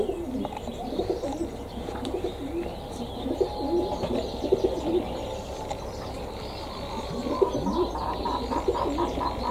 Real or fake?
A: real